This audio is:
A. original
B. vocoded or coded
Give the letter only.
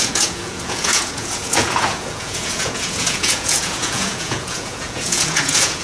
B